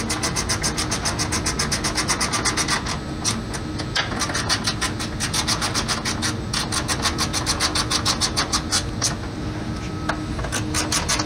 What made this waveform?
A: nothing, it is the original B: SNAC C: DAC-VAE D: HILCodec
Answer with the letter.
A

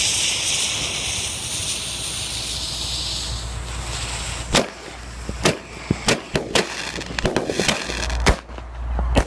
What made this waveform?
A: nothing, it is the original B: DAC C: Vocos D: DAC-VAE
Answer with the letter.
A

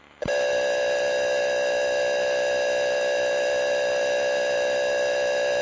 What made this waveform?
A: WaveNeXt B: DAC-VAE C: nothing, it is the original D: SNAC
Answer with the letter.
B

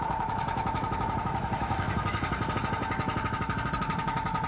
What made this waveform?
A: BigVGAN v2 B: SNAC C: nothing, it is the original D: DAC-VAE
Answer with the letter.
D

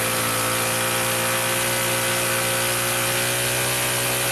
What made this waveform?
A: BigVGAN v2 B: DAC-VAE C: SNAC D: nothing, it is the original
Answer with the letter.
D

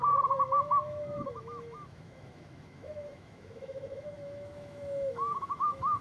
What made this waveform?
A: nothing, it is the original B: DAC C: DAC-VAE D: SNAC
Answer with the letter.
C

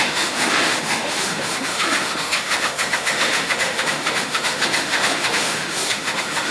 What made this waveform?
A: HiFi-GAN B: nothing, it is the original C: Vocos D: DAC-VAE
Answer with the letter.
D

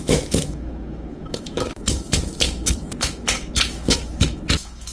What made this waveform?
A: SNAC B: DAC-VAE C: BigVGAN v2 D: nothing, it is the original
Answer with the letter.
B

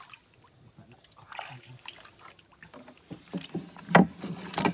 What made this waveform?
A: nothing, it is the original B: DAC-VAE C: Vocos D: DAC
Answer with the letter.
A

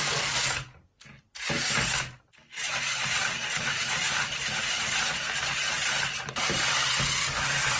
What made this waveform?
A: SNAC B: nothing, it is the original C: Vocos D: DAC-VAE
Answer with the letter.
B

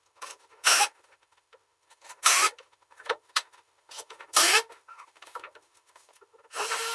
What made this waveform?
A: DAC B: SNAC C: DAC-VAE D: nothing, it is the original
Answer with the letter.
C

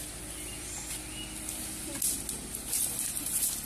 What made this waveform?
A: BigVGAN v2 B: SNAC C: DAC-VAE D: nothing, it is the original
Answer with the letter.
D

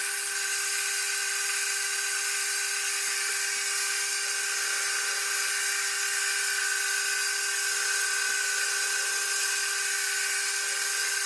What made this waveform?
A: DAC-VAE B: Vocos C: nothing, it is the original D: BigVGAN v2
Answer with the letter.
C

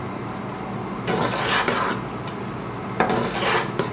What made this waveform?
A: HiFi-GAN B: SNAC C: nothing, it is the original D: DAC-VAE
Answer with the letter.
C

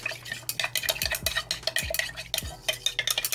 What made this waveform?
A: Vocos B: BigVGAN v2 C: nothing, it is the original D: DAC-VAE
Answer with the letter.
C